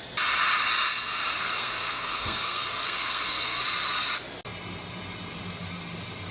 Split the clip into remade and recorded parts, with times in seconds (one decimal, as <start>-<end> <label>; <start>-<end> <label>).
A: 0.0-1.3 recorded; 1.3-3.6 remade; 3.6-6.3 recorded